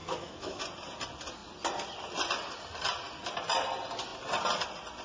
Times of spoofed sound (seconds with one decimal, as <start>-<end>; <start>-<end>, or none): 0.0-0.6